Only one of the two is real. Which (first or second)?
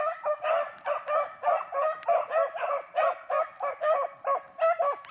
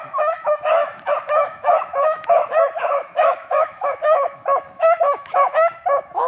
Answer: first